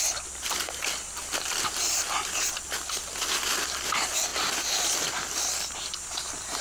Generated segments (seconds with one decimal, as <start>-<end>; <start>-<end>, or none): none

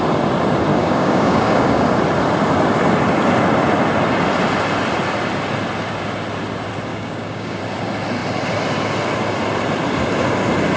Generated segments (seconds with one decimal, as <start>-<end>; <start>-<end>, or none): 0.7-1.8; 6.9-7.6

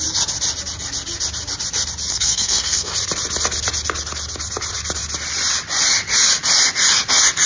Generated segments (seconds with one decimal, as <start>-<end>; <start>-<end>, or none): 2.1-2.9

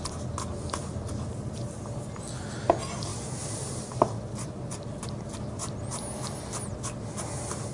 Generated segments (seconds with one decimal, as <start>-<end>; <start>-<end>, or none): 3.1-4.1

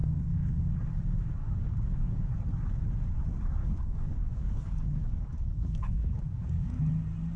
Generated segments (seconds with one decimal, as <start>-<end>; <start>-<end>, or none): 0.0-0.7; 1.4-2.3; 3.6-6.8